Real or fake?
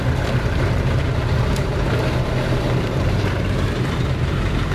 fake